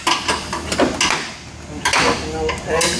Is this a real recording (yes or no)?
yes